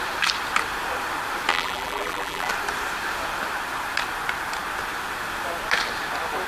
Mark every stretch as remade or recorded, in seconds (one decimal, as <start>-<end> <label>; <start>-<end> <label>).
0.0-1.5 recorded; 1.5-2.5 remade; 2.5-6.5 recorded